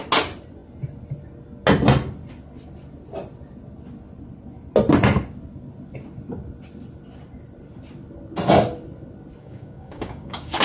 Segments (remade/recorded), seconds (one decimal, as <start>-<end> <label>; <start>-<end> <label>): 0.0-9.4 recorded; 9.4-10.6 remade